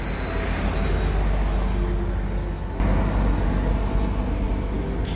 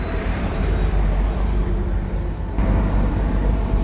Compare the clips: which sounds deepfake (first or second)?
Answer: second